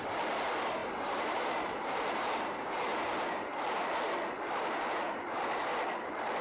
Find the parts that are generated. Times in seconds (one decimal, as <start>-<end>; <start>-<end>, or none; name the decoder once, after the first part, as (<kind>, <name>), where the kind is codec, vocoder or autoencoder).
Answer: 0.8-2.3 (vocoder, BigVGAN v2)